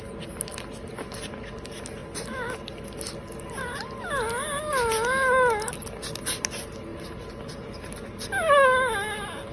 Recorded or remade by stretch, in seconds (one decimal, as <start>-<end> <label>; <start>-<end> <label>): 0.0-6.9 recorded; 6.9-7.4 remade; 7.4-9.5 recorded